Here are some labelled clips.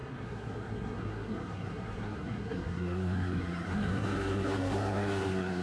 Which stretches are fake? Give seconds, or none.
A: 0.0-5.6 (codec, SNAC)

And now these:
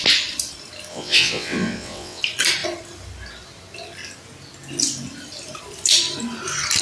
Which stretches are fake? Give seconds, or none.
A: 0.9-2.2 (vocoder, WaveNeXt)

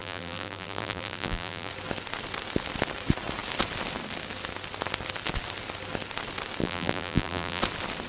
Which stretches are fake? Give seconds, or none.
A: 0.0-1.7 (vocoder, BigVGAN v2); 6.6-7.6

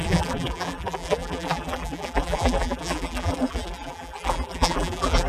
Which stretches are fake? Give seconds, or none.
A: 0.0-5.3 (vocoder, BigVGAN v2)